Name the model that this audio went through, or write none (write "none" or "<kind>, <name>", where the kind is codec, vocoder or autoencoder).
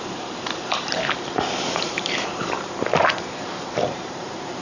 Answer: vocoder, BigVGAN v2